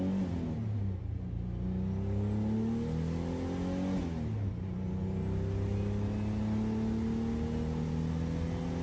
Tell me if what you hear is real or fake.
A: real